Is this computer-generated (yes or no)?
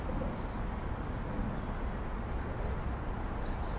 no